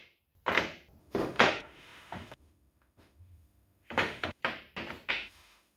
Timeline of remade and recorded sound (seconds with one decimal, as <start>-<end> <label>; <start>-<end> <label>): 0.0-1.0 recorded; 1.0-4.4 remade; 4.4-5.1 recorded; 5.1-5.8 remade